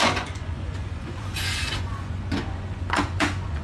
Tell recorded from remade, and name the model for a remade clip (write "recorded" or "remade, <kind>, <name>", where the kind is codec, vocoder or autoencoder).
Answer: remade, vocoder, Vocos